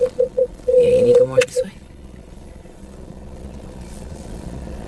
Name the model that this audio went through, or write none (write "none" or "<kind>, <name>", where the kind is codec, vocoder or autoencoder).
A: vocoder, Vocos